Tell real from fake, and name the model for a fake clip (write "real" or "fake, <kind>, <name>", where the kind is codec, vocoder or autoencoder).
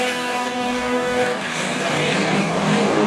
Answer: fake, codec, DAC